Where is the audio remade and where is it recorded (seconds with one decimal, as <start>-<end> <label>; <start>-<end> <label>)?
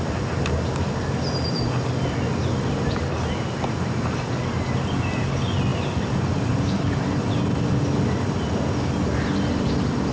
0.0-5.7 recorded; 5.7-7.3 remade; 7.3-10.1 recorded